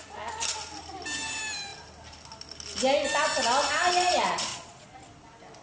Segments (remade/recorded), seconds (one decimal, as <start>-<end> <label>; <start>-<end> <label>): 0.0-4.5 recorded; 4.5-5.0 remade; 5.0-5.6 recorded